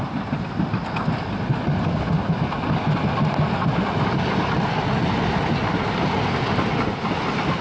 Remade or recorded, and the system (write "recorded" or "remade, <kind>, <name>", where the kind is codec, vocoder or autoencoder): recorded